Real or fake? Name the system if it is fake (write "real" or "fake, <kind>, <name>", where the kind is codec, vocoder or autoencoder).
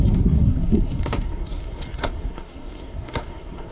fake, codec, SNAC